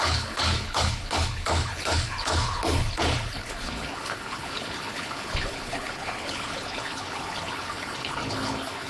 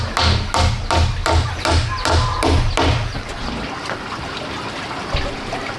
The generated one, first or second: first